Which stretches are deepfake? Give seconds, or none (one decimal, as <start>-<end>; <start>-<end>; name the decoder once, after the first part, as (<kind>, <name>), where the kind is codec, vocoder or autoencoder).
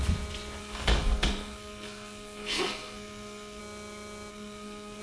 0.6-3.6 (codec, SNAC); 4.3-5.0